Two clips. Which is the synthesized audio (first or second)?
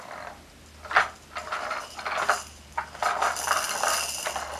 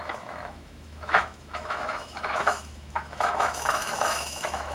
second